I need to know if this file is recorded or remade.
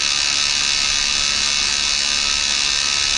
recorded